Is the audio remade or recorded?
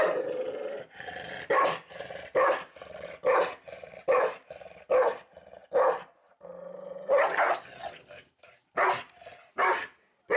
recorded